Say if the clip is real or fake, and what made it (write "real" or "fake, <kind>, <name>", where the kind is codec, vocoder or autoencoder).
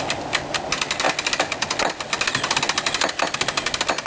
real